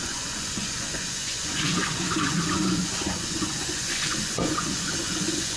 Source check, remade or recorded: remade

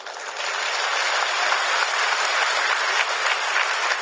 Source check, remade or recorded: recorded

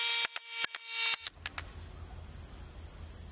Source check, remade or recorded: recorded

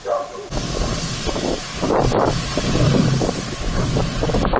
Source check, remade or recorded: remade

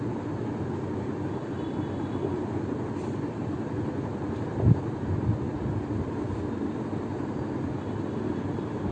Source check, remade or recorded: recorded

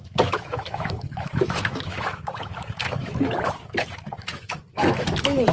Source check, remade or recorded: remade